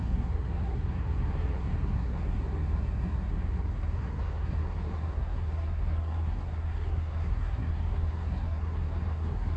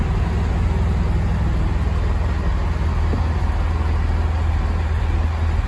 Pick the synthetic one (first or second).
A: first